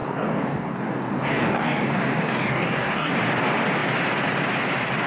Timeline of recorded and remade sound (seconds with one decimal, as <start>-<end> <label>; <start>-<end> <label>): 0.0-3.1 remade; 3.1-5.1 recorded